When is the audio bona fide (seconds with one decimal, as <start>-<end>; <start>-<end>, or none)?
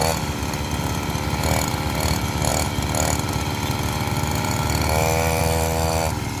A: 0.0-6.4